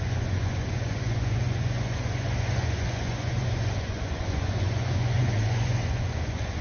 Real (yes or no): no